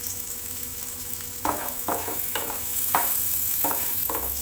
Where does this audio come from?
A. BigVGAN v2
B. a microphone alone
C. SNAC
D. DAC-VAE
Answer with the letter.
D